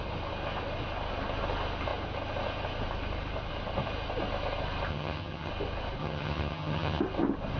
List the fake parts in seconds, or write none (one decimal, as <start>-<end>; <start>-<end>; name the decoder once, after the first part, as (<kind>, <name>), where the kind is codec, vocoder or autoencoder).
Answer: 4.9-5.5 (vocoder, HiFi-GAN); 6.0-7.0